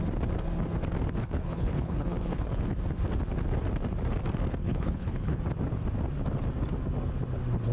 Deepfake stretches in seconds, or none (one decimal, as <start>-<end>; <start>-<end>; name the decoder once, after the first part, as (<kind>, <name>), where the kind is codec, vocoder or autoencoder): 1.2-2.6 (codec, HILCodec); 4.6-5.4